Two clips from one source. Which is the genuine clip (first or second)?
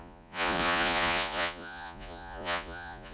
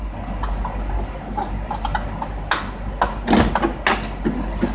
second